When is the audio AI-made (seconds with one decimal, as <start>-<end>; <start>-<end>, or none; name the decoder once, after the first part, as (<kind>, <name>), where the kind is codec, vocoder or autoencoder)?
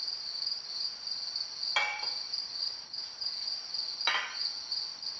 1.9-4.0 (vocoder, BigVGAN v2)